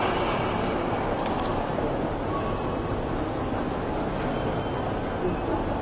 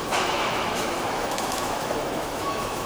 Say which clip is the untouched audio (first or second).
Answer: first